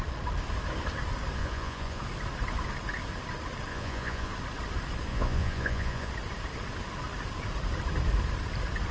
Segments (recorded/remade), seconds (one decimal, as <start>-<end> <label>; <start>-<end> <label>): 0.0-1.4 recorded; 1.4-2.0 remade; 2.0-3.7 recorded; 3.7-4.3 remade; 4.3-5.1 recorded; 5.1-6.1 remade; 6.1-8.9 recorded